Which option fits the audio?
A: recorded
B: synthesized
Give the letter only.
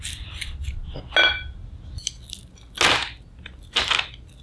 A